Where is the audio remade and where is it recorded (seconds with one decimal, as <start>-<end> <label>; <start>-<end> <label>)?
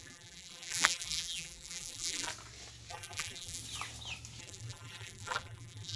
0.0-2.3 remade; 2.3-2.9 recorded; 2.9-3.6 remade; 3.6-4.4 recorded; 4.4-6.0 remade